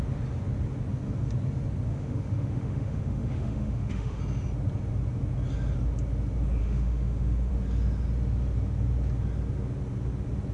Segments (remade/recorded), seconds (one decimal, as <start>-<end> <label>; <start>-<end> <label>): 0.0-1.9 recorded; 1.9-4.2 remade; 4.2-6.6 recorded; 6.6-7.5 remade; 7.5-10.5 recorded